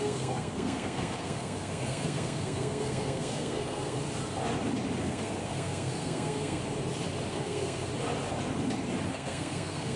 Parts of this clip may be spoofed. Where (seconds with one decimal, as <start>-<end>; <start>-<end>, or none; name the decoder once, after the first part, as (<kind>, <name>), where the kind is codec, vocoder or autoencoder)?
0.0-4.0 (codec, SNAC); 5.0-6.6; 7.3-7.9; 9.1-10.0

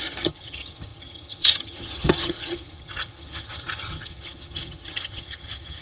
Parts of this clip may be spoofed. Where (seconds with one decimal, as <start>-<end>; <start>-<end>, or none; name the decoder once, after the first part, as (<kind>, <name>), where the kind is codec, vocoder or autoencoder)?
0.0-5.8 (vocoder, HiFi-GAN)